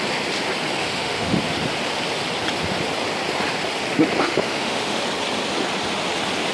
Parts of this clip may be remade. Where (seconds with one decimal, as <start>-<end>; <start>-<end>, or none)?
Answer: 0.8-1.4; 4.2-5.0